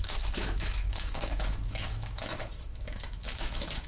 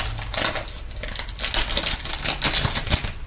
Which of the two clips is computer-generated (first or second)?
first